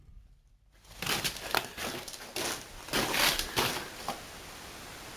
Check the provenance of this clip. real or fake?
real